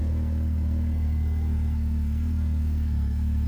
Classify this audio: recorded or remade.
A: remade